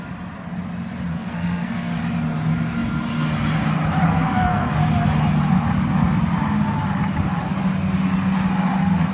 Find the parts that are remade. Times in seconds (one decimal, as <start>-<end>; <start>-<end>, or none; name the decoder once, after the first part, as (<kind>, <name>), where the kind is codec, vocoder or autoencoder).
1.1-1.9 (codec, SNAC); 4.1-4.8